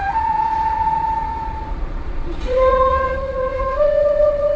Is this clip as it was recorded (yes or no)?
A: no